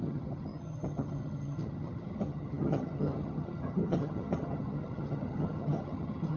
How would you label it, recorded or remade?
remade